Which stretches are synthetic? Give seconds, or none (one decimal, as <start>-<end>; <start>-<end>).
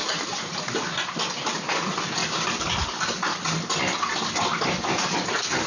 0.0-0.6; 2.2-2.7